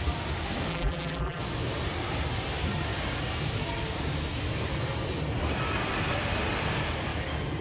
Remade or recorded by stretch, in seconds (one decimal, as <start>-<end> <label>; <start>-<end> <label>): 0.0-0.7 recorded; 0.7-1.4 remade; 1.4-7.6 recorded